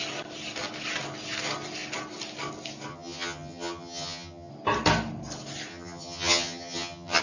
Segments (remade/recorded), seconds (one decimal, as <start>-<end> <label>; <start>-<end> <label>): 0.0-2.9 recorded; 2.9-4.5 remade; 4.5-5.7 recorded; 5.7-7.2 remade